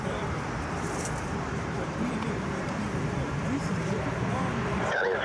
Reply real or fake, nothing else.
fake